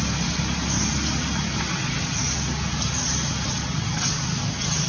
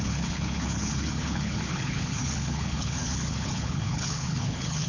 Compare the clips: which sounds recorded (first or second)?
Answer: first